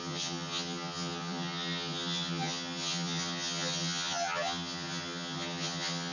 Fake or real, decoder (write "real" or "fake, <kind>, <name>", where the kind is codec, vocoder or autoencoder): fake, vocoder, HiFi-GAN